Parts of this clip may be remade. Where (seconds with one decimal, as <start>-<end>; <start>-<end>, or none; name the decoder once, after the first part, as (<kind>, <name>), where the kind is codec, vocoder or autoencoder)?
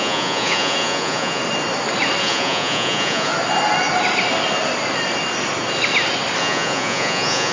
0.0-1.4 (vocoder, Vocos); 2.2-3.3; 6.4-7.5